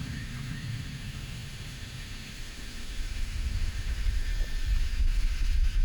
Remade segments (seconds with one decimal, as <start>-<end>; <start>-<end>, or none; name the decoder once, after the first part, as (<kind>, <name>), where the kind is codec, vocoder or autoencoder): 0.0-4.3 (autoencoder, DAC-VAE); 4.8-5.8